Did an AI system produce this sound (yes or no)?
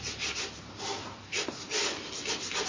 no